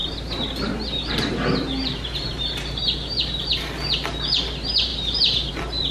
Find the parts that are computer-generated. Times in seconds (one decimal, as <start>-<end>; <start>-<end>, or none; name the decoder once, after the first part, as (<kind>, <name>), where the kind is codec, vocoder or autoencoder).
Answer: 0.0-3.5 (vocoder, BigVGAN v2); 4.9-5.5